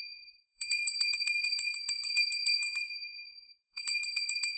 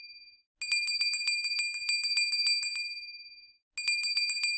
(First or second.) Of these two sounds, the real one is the second